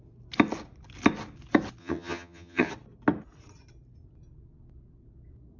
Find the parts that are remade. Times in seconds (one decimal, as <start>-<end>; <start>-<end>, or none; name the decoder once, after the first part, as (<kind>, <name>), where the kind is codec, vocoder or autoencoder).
1.8-2.7 (vocoder, HiFi-GAN)